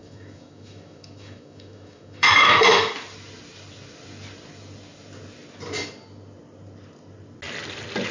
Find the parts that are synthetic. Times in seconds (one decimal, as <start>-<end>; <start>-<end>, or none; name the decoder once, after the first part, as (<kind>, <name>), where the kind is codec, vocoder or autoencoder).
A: 0.0-2.9 (autoencoder, DAC-VAE)